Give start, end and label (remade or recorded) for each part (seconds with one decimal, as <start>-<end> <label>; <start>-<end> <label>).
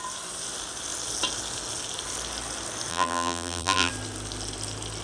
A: 0.0-2.9 recorded; 2.9-3.9 remade; 3.9-5.0 recorded